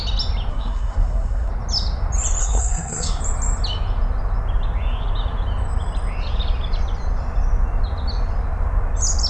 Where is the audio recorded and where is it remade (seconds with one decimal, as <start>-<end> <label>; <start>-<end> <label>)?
0.0-0.5 recorded; 0.5-1.5 remade; 1.5-2.4 recorded; 2.4-3.2 remade; 3.2-9.3 recorded

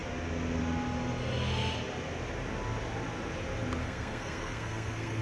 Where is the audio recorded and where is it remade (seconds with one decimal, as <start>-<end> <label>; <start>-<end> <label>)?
0.0-3.8 recorded; 3.8-5.2 remade

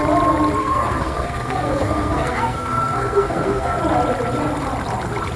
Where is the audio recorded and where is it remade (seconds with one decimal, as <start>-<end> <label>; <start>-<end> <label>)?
0.0-0.6 recorded; 0.6-3.8 remade; 3.8-5.4 recorded